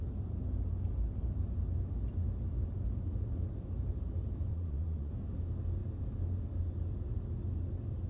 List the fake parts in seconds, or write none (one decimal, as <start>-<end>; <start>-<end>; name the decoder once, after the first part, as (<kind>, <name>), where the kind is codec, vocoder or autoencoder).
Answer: 4.5-5.1 (vocoder, Vocos)